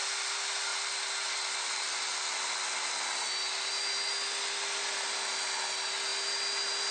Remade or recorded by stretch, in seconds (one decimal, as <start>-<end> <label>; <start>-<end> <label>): 0.0-6.9 recorded